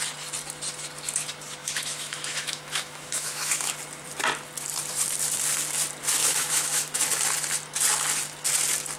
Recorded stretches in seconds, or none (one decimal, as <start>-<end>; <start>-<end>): 0.0-1.6; 3.7-6.2; 7.0-9.0